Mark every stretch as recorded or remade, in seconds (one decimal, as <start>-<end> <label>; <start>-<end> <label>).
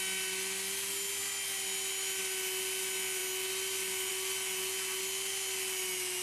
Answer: 0.0-6.2 recorded